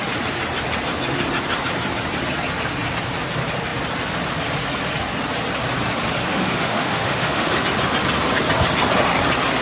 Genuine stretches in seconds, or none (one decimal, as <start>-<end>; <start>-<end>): 0.0-6.3; 7.5-9.6